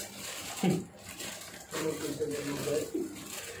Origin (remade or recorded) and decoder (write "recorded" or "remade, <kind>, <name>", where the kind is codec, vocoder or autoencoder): remade, vocoder, BigVGAN v2